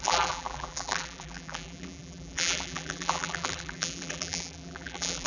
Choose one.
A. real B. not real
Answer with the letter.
B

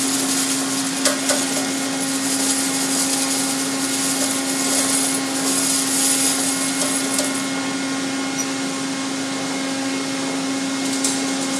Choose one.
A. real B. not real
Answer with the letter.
A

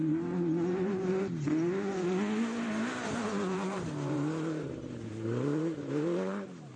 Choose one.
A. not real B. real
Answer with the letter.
A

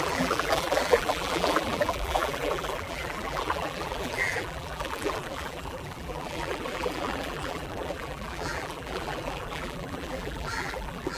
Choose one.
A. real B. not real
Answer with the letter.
B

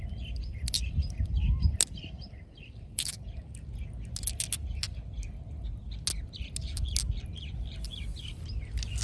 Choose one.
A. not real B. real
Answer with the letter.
B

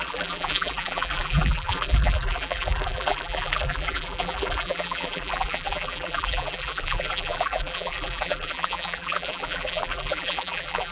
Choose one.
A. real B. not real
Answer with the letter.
B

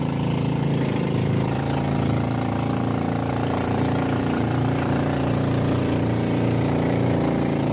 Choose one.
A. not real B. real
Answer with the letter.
A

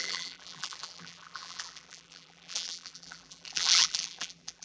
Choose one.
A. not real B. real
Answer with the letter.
A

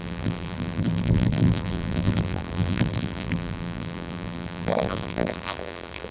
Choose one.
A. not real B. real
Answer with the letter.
A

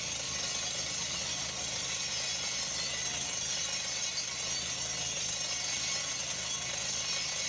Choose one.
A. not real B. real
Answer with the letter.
B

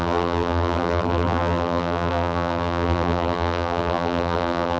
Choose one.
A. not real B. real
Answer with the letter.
A